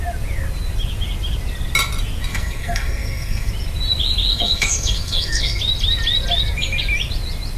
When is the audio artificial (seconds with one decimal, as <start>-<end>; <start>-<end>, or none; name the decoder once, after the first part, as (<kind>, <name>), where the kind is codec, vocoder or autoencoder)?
2.3-3.5 (codec, SNAC); 4.3-5.6